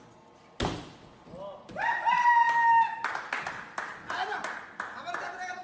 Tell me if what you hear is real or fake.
real